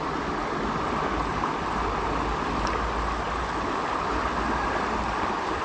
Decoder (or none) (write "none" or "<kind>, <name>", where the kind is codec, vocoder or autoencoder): none